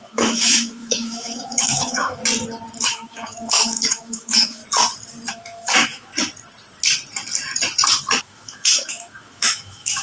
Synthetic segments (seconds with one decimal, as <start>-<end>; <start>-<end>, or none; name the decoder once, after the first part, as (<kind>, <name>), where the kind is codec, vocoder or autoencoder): 0.0-2.2 (autoencoder, DAC-VAE); 2.8-4.6; 5.3-6.1; 8.2-10.0